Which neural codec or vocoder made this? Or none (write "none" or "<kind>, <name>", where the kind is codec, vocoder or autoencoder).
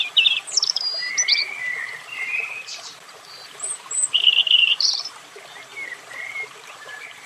vocoder, BigVGAN v2